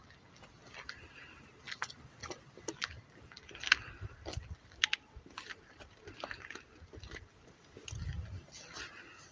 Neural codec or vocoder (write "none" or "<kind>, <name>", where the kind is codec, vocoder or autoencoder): none